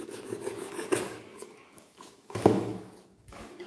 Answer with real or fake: fake